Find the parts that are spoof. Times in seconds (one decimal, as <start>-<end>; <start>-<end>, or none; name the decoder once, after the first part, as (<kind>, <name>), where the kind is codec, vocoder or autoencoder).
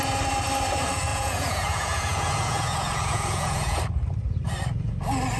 1.1-3.8 (vocoder, Vocos)